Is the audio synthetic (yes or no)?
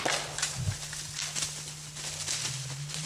no